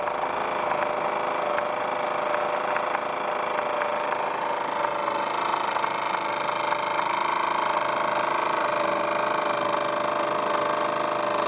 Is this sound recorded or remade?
recorded